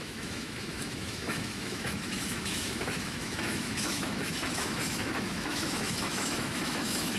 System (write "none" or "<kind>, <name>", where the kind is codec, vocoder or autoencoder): autoencoder, DAC-VAE